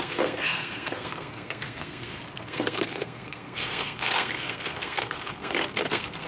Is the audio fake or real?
fake